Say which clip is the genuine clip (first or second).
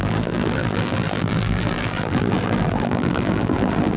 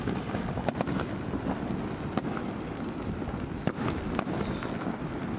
second